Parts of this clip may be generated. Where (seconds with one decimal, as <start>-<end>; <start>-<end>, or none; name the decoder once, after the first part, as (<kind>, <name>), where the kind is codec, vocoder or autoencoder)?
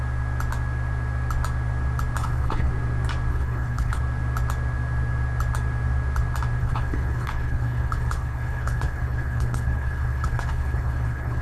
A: 2.2-2.7 (codec, HILCodec); 3.3-4.0; 6.6-11.4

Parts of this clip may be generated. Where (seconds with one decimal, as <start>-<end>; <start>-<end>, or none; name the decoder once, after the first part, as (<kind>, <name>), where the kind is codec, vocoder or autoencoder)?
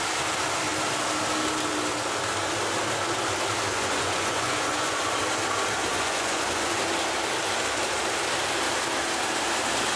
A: 3.7-5.1 (vocoder, Vocos); 5.9-6.8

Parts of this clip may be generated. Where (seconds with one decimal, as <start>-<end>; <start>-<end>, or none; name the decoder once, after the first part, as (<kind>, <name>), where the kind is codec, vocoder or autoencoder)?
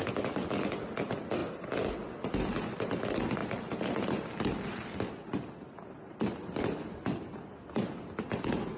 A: none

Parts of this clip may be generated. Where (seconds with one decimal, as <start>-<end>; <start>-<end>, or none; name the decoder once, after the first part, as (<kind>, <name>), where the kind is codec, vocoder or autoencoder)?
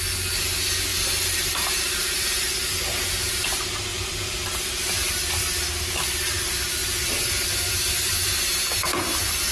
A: 0.9-2.7 (vocoder, BigVGAN v2); 3.9-5.1; 6.8-8.4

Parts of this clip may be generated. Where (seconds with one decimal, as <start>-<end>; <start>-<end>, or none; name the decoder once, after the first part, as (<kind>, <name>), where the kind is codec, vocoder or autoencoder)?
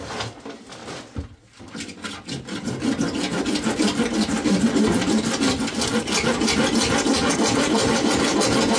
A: none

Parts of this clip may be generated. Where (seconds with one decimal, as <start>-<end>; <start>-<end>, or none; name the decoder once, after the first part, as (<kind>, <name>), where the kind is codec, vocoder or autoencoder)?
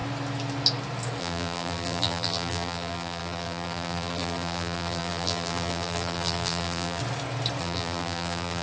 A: 1.2-7.0 (vocoder, BigVGAN v2); 7.6-8.6